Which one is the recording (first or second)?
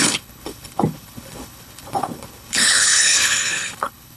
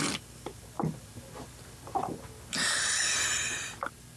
second